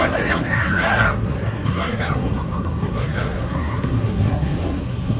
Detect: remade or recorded remade